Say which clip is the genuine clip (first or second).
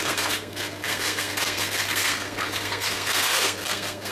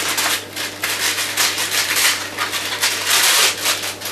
second